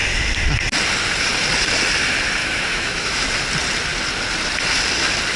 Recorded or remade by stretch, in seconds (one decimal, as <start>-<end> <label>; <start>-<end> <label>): 0.0-2.4 recorded; 2.4-3.3 remade; 3.3-5.4 recorded